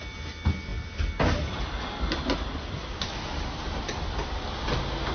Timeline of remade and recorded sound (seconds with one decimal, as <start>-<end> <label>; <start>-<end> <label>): 0.0-5.1 recorded

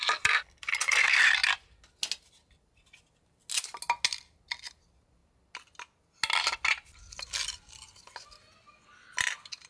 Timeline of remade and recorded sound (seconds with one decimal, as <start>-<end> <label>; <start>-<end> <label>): 0.0-9.7 recorded

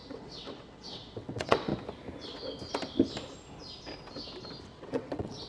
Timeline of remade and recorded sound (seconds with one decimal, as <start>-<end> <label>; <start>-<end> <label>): 0.0-1.7 remade; 1.7-4.6 recorded; 4.6-5.5 remade

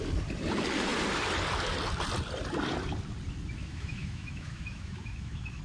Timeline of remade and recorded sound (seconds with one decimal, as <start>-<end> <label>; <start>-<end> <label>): 0.0-3.6 recorded; 3.6-5.6 remade

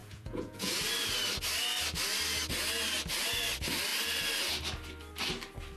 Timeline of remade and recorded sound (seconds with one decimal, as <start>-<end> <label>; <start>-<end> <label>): 0.0-0.7 remade; 0.7-5.8 recorded

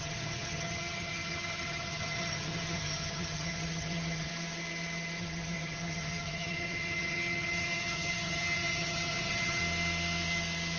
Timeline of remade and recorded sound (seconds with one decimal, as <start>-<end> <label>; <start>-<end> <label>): 0.0-4.3 remade; 4.3-5.2 recorded; 5.2-9.6 remade; 9.6-10.8 recorded